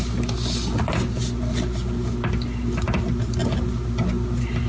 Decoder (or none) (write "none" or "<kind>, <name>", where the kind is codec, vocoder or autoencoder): none